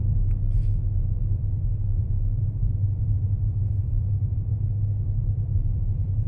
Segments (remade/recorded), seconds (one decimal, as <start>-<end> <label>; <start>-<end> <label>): 0.0-1.0 recorded; 1.0-4.8 remade; 4.8-5.2 recorded; 5.2-6.3 remade